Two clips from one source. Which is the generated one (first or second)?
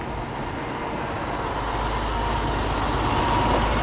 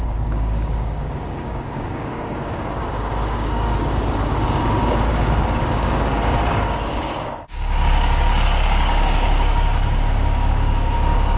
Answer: second